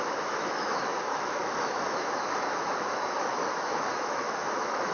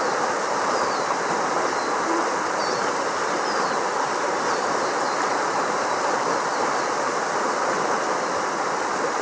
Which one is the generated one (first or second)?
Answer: first